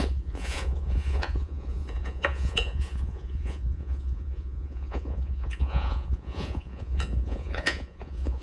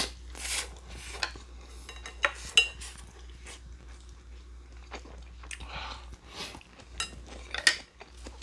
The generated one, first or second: first